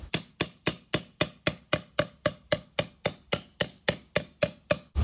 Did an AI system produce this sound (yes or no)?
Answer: no